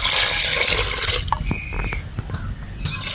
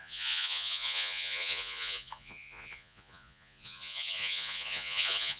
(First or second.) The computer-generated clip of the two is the second